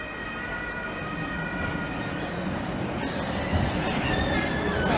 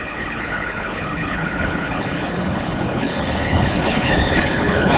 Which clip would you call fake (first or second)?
second